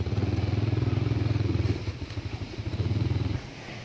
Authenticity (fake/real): fake